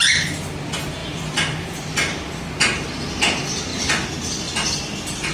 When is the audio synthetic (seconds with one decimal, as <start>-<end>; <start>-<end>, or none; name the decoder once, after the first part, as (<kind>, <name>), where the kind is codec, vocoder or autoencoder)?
none